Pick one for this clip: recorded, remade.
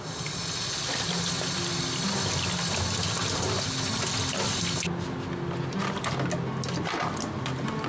recorded